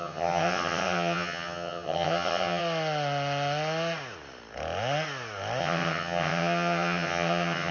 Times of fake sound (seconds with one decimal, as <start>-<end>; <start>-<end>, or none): 0.0-2.6; 5.6-7.7